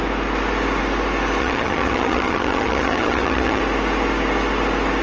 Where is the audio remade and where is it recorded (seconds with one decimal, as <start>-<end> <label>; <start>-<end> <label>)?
0.0-1.4 recorded; 1.4-3.6 remade; 3.6-5.0 recorded